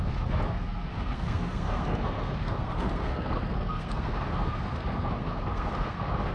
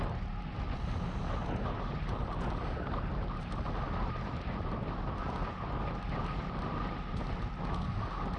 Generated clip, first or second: first